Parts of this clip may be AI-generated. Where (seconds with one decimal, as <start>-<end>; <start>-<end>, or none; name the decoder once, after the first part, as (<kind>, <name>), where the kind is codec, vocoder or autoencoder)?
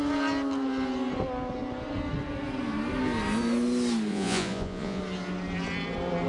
4.1-5.0 (vocoder, Vocos)